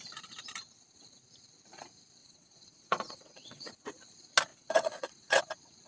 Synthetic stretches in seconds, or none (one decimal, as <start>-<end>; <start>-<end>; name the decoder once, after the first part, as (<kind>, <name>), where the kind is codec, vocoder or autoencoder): 2.2-3.7 (vocoder, WaveNeXt); 4.5-5.4